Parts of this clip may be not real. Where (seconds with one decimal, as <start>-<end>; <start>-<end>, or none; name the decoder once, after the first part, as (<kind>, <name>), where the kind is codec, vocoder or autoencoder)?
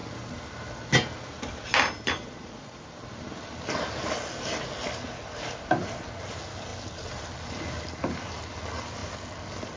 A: 2.2-2.8 (vocoder, Vocos)